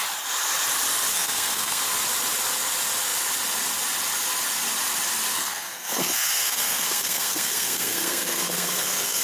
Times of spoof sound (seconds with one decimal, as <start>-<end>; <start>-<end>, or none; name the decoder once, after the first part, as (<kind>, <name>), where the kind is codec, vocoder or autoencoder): 1.1-1.8 (codec, SNAC); 5.3-9.2